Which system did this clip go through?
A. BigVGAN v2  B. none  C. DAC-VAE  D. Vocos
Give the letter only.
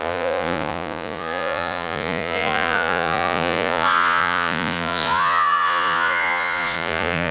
D